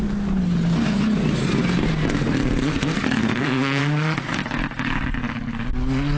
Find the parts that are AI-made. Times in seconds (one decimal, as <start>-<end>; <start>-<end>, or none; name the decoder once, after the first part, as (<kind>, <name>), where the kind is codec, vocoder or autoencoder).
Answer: 2.7-3.8 (codec, SNAC)